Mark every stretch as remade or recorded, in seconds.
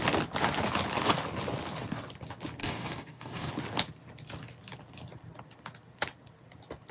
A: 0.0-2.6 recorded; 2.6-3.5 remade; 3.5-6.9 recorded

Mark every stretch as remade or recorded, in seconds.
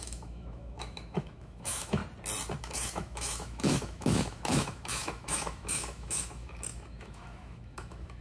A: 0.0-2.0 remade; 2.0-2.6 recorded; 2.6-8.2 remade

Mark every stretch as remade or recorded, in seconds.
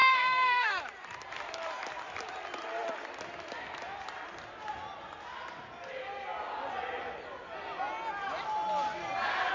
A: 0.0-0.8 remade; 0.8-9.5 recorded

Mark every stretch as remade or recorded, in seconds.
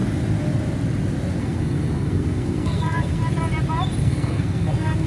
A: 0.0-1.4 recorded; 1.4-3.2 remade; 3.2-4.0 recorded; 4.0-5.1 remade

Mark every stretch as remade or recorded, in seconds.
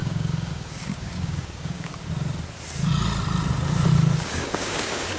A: 0.0-1.9 remade; 1.9-4.2 recorded; 4.2-5.2 remade